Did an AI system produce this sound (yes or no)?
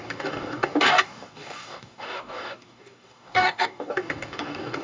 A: yes